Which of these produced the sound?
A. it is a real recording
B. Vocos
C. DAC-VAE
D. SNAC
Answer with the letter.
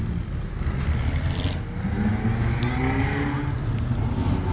A